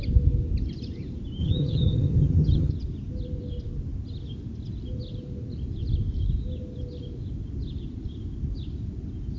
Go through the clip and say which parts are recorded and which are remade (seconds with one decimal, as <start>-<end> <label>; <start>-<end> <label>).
0.0-1.4 recorded; 1.4-2.7 remade; 2.7-9.4 recorded